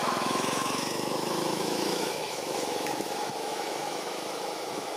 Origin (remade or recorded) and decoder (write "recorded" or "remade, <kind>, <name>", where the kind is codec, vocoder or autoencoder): remade, autoencoder, DAC-VAE